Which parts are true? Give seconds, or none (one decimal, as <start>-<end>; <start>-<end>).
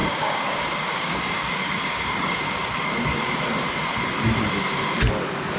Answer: 3.4-5.6